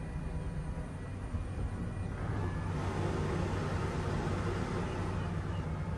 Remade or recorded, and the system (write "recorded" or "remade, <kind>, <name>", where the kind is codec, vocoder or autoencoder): recorded